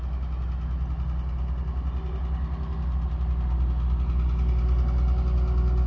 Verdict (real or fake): real